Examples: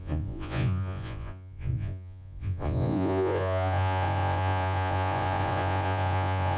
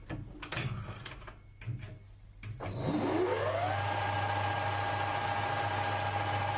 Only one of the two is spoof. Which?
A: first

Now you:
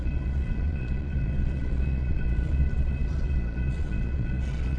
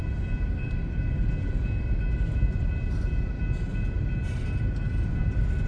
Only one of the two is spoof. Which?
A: first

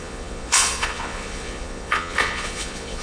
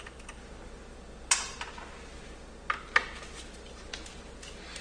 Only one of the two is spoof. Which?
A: first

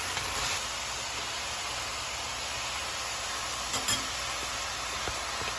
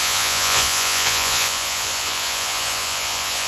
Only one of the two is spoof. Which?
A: second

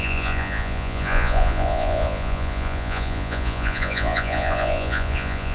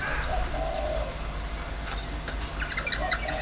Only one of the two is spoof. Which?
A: first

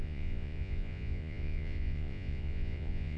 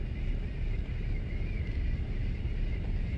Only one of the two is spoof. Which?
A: first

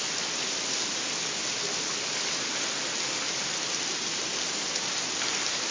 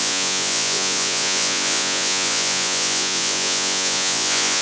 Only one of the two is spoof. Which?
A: second